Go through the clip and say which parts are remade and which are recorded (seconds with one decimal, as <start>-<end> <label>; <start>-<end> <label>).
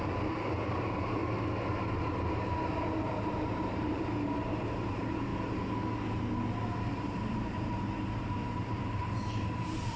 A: 0.0-1.2 remade; 1.2-3.2 recorded; 3.2-5.3 remade; 5.3-6.9 recorded; 6.9-10.0 remade